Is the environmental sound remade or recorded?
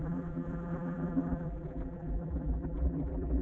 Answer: remade